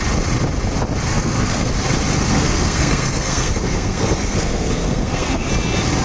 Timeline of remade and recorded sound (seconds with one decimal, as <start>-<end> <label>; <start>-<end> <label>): 0.0-1.1 recorded; 1.1-1.7 remade; 1.7-2.3 recorded; 2.3-5.5 remade; 5.5-6.0 recorded